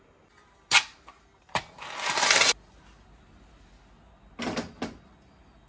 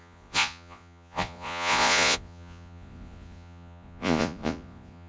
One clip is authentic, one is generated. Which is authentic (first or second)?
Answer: first